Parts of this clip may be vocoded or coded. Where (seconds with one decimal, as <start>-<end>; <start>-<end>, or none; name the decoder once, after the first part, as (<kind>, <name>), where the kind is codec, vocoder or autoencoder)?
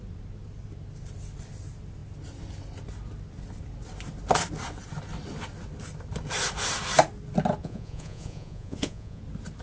7.6-9.2 (vocoder, Vocos)